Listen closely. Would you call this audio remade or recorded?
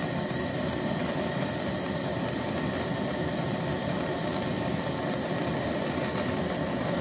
recorded